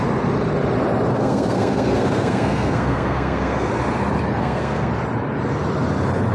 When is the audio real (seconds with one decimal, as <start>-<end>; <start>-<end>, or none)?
0.0-1.1; 3.7-4.4; 4.9-6.3